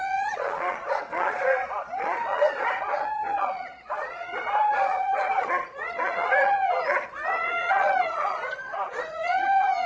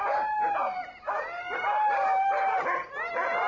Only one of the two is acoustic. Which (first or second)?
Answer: second